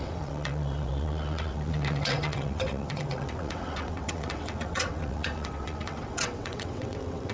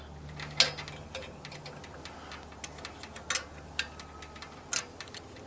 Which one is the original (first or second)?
second